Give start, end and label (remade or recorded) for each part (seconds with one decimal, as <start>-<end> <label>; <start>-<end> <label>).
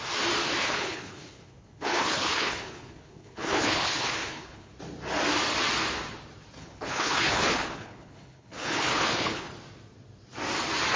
0.0-0.6 recorded; 0.6-4.7 remade; 4.7-6.6 recorded; 6.6-9.5 remade; 9.5-11.0 recorded